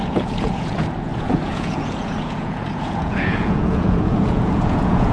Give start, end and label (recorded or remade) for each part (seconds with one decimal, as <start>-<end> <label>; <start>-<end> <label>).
0.0-5.1 remade